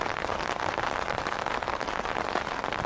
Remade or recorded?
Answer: recorded